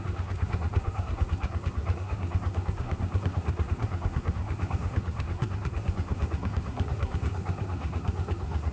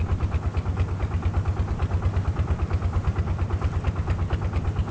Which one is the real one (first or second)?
second